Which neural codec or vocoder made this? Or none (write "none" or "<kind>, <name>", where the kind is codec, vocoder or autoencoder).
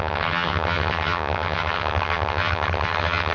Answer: vocoder, HiFi-GAN